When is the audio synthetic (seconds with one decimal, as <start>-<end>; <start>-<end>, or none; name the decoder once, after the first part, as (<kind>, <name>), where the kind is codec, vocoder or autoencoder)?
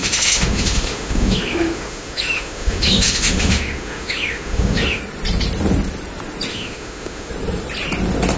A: 0.0-5.0 (autoencoder, DAC-VAE); 6.5-7.3